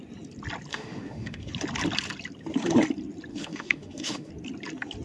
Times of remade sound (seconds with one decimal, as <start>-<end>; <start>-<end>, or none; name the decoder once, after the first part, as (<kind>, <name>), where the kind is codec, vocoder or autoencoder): 0.7-1.5 (autoencoder, DAC-VAE); 3.3-4.3